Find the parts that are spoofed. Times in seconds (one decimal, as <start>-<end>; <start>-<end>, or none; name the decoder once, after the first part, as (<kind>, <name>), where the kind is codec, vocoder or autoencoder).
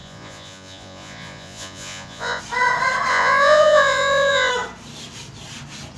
0.0-2.4 (vocoder, Vocos); 3.1-4.5